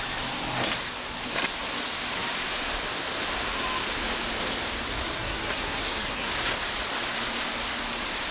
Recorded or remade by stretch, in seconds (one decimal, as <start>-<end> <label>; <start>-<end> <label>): 0.0-5.1 recorded; 5.1-6.3 remade; 6.3-8.3 recorded